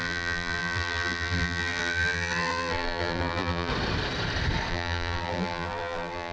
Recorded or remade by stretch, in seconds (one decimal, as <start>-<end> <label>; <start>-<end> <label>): 0.0-3.7 remade; 3.7-4.7 recorded; 4.7-6.3 remade